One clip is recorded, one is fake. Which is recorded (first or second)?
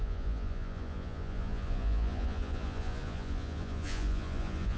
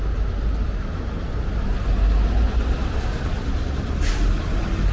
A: second